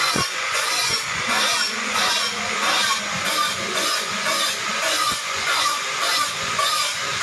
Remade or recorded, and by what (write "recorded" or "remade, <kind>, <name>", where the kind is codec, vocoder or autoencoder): remade, vocoder, Vocos